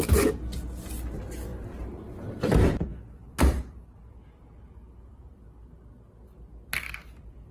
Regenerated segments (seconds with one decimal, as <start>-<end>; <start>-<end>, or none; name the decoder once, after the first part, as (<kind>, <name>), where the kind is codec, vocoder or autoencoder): 1.5-2.5 (vocoder, BigVGAN v2)